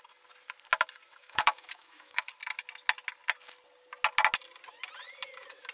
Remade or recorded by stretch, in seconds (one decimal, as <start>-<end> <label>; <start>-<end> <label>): 0.0-1.2 recorded; 1.2-2.3 remade; 2.3-5.7 recorded